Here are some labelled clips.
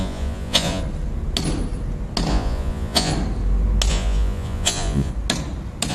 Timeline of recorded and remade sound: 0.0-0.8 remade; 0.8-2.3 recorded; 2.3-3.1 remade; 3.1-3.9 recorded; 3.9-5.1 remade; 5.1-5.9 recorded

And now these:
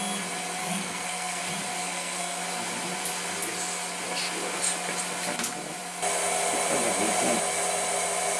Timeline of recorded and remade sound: 0.0-0.6 recorded; 0.6-1.4 remade; 1.4-1.8 recorded; 1.8-2.4 remade; 2.4-8.4 recorded